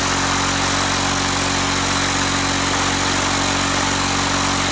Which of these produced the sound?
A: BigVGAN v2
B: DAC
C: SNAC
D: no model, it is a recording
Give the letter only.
D